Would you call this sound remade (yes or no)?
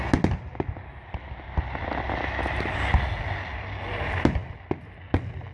no